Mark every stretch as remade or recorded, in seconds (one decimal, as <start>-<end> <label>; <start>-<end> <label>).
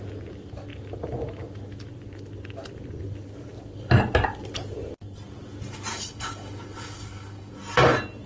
0.0-5.9 recorded; 5.9-7.5 remade; 7.5-8.3 recorded